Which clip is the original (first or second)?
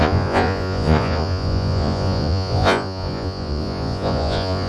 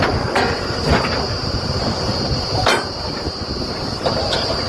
second